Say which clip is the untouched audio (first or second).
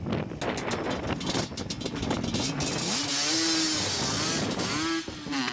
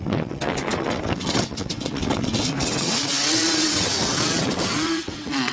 first